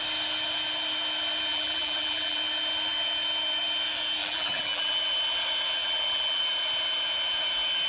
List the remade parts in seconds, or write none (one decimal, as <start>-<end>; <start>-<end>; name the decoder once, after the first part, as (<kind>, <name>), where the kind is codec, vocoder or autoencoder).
1.5-2.4 (vocoder, BigVGAN v2); 4.2-5.0; 5.8-6.4